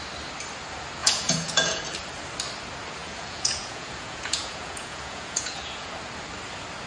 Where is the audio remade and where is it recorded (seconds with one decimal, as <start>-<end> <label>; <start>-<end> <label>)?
0.0-1.0 recorded; 1.0-1.8 remade; 1.8-3.0 recorded; 3.0-5.9 remade; 5.9-6.9 recorded

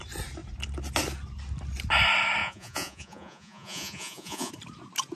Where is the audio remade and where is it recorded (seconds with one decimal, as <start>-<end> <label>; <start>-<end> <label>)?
0.0-2.4 recorded; 2.4-4.5 remade; 4.5-5.2 recorded

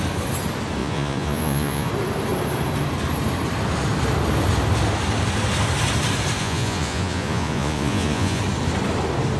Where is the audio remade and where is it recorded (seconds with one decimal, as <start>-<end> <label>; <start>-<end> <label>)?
0.0-0.8 recorded; 0.8-1.9 remade; 1.9-6.4 recorded; 6.4-8.4 remade; 8.4-9.4 recorded

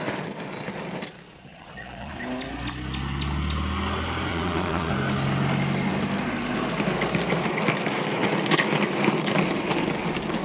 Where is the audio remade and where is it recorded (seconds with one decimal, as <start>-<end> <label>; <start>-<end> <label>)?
0.0-1.5 recorded; 1.5-2.1 remade; 2.1-4.3 recorded; 4.3-4.9 remade; 4.9-10.4 recorded

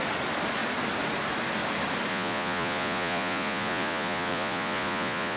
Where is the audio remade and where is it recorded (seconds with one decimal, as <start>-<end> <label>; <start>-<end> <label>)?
0.0-2.1 recorded; 2.1-5.4 remade

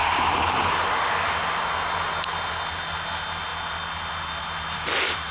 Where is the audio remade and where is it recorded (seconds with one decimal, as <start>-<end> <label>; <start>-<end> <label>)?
0.0-5.3 recorded